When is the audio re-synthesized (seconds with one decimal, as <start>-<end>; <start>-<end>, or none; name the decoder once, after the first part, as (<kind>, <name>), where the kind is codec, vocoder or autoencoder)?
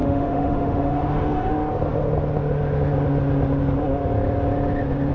0.0-1.5 (autoencoder, DAC-VAE)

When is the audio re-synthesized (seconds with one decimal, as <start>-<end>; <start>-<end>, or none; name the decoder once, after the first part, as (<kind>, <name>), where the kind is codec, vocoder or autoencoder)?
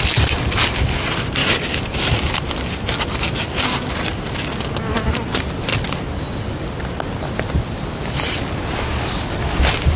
none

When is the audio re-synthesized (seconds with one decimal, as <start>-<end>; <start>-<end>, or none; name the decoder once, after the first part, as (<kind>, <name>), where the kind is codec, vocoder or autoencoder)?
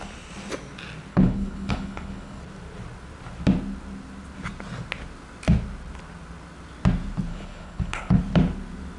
1.1-2.4 (codec, HILCodec); 7.3-8.2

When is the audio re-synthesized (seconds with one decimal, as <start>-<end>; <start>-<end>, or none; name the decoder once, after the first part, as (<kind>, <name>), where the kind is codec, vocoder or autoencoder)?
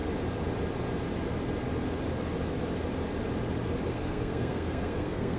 3.9-5.4 (codec, SNAC)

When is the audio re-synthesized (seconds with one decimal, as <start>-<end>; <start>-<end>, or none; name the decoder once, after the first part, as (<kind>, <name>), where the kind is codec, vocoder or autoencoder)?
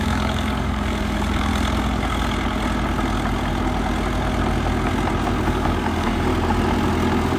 0.0-1.5 (codec, DAC); 5.5-6.3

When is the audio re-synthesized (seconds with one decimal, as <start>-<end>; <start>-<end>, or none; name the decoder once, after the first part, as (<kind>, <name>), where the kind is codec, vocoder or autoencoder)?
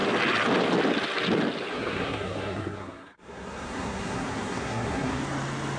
1.7-5.2 (codec, SNAC)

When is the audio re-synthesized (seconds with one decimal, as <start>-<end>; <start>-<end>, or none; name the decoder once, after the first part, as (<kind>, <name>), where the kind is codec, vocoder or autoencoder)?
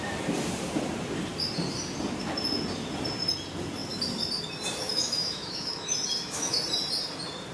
4.9-6.6 (autoencoder, DAC-VAE)